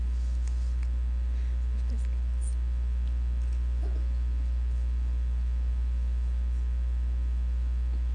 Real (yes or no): yes